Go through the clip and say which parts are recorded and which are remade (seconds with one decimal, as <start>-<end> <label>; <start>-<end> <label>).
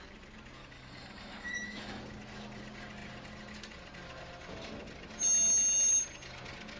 0.0-0.6 recorded; 0.6-2.0 remade; 2.0-6.8 recorded